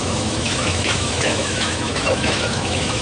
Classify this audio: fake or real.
fake